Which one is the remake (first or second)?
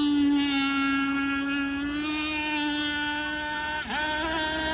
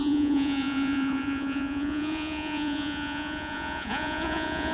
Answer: second